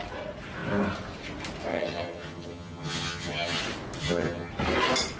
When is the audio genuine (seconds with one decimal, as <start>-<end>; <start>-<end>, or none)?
0.0-1.7; 3.6-4.0; 4.5-5.2